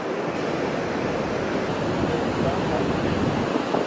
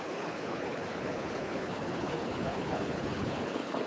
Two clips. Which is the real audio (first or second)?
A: first